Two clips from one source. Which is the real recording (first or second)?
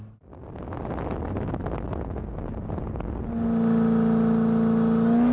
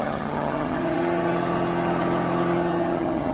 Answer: first